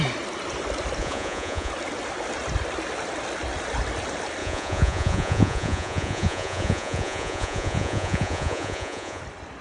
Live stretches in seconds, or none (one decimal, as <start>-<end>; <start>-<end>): 0.0-1.0; 1.7-4.4; 9.2-9.6